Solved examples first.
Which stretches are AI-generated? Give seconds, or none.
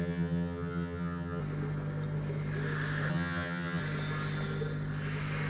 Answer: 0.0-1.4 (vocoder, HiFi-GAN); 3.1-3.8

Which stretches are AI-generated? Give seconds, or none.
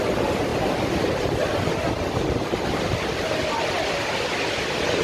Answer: none